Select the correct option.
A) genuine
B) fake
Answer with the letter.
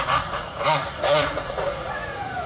B